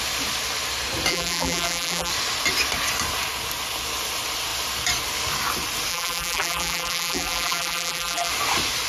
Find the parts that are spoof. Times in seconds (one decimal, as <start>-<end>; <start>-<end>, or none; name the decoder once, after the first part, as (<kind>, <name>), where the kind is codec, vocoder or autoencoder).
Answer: 1.1-2.1 (vocoder, BigVGAN v2); 5.9-8.3